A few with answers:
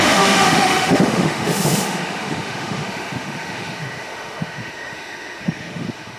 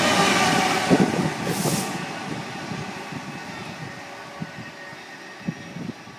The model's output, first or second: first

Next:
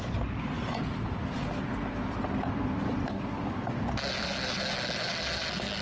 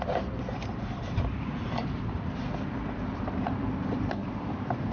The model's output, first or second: second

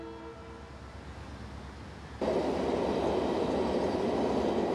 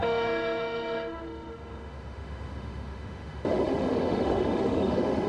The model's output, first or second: second